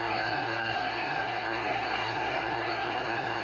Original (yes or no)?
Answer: no